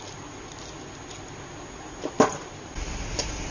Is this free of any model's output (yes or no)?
yes